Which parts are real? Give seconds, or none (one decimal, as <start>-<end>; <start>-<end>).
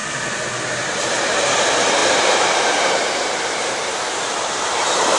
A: 0.0-0.9